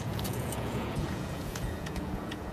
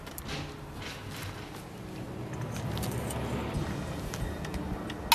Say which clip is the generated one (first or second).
first